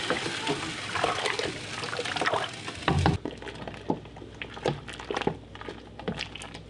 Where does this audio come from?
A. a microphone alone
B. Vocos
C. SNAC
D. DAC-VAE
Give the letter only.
A